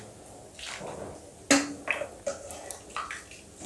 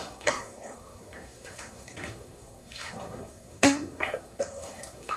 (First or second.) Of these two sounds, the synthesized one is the second